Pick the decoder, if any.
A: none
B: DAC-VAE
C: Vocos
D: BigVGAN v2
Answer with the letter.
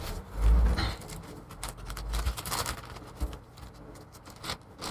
A